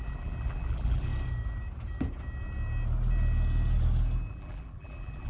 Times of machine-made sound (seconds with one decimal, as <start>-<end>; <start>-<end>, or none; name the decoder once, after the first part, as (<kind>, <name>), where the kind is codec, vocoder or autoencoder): 0.0-1.1 (vocoder, BigVGAN v2); 4.3-5.3